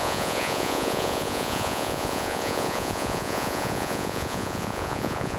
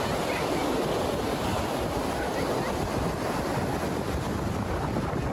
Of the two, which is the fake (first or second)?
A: first